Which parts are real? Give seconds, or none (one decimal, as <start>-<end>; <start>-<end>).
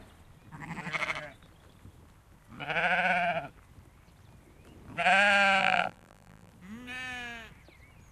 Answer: 0.0-5.6; 6.5-8.1